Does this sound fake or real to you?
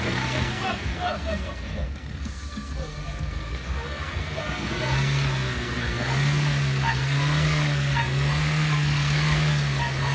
fake